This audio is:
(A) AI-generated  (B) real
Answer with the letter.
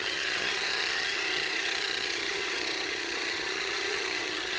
A